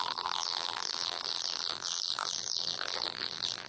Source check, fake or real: fake